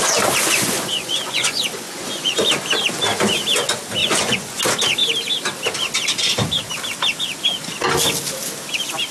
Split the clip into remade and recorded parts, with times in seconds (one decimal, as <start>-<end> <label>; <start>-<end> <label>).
0.0-0.4 recorded; 0.4-2.5 remade; 2.5-4.0 recorded; 4.0-4.6 remade; 4.6-9.1 recorded